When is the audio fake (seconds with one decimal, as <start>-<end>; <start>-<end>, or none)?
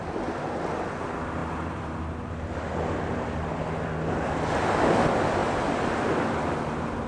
none